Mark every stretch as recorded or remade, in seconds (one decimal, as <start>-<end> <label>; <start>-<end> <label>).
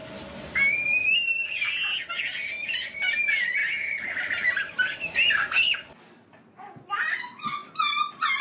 0.0-8.4 recorded